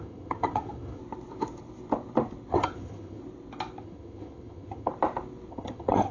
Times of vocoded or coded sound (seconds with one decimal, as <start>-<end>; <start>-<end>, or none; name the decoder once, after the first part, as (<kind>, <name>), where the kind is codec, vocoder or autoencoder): 0.0-1.0 (vocoder, HiFi-GAN); 2.5-3.2; 3.8-4.9; 5.5-6.1